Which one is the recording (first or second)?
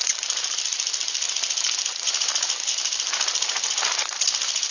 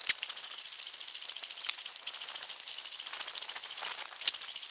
second